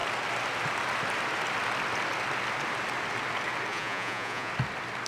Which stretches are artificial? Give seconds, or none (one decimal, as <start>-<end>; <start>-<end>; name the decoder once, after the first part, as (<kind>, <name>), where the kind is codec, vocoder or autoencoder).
3.7-4.5 (vocoder, Vocos)